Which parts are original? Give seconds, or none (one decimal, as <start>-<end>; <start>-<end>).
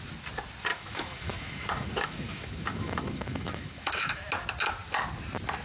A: 0.0-0.7; 4.1-5.6